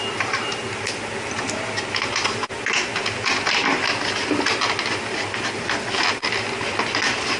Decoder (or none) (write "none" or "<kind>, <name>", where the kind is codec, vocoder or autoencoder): none